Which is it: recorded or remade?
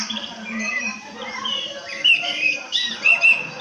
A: remade